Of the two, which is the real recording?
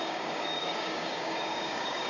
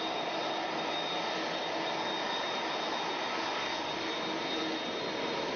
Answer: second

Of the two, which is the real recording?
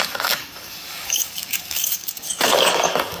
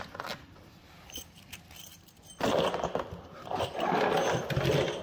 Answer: second